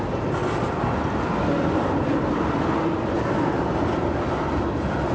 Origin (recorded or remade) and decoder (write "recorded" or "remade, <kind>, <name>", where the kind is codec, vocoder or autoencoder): recorded